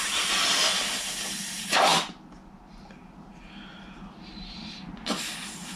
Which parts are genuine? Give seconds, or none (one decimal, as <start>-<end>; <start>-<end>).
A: 0.0-5.8